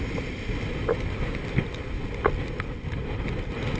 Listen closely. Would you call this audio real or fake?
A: real